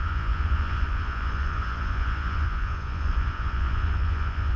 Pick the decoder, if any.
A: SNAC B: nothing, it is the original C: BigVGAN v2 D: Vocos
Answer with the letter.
D